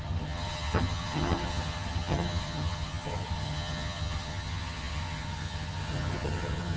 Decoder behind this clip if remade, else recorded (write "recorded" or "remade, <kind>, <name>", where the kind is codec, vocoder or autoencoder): remade, vocoder, HiFi-GAN